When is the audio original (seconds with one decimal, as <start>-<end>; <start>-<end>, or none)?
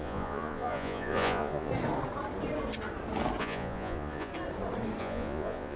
1.7-3.4; 4.3-5.0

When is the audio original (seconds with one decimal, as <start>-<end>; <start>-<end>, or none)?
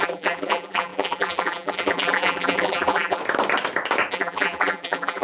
3.2-4.1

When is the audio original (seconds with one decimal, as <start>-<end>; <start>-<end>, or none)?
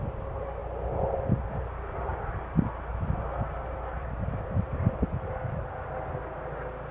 0.6-1.2; 2.1-2.9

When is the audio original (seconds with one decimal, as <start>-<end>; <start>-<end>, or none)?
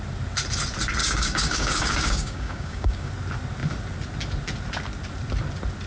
0.0-1.0; 3.1-5.9